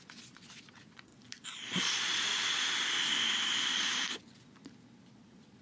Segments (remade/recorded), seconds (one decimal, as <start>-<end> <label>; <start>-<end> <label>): 0.0-1.1 remade; 1.1-1.8 recorded; 1.8-2.3 remade; 2.3-5.1 recorded; 5.1-5.6 remade